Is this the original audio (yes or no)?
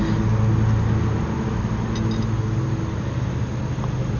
yes